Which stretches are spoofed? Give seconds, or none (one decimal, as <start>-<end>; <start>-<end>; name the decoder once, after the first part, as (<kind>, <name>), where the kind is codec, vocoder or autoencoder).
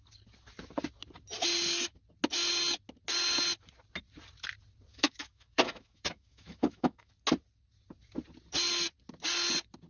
4.9-7.1 (autoencoder, DAC-VAE)